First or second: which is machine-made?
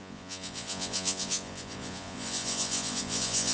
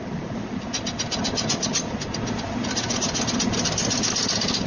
first